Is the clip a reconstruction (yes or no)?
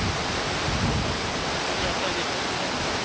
no